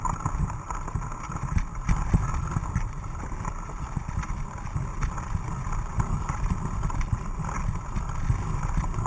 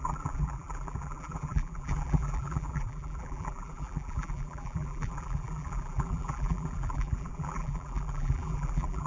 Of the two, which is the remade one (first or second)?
second